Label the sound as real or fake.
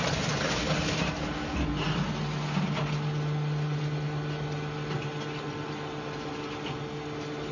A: real